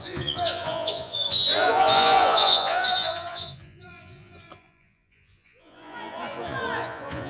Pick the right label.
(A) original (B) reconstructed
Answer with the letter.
B